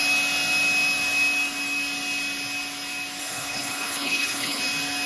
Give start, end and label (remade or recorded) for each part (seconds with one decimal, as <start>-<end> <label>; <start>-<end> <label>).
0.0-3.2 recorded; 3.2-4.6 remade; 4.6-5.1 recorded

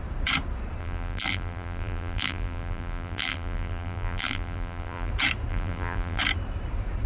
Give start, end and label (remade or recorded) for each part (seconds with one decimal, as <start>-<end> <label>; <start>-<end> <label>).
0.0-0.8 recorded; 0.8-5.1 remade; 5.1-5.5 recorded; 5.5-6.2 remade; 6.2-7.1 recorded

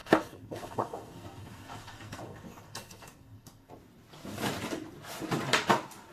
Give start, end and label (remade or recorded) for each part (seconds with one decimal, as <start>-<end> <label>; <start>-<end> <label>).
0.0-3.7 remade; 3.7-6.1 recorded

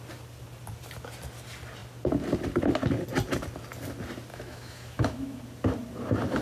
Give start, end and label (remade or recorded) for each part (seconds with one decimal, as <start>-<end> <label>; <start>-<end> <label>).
0.0-4.3 recorded; 4.3-5.4 remade; 5.4-6.4 recorded